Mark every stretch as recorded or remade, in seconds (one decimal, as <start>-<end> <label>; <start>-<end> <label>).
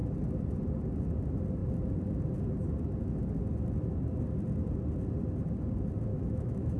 0.0-6.1 recorded; 6.1-6.8 remade